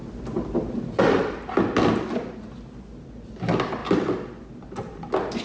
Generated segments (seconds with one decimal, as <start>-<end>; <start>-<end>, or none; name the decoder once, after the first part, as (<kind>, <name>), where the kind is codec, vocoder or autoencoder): none